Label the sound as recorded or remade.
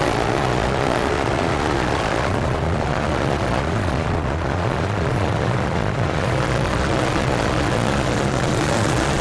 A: remade